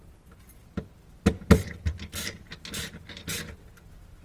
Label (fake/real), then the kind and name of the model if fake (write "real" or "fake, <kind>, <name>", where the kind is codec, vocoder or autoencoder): real